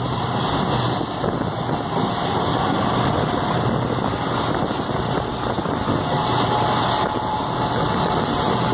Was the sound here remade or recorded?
recorded